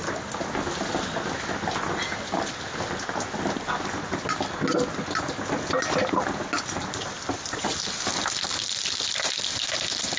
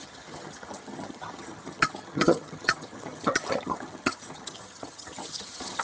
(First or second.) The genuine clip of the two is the first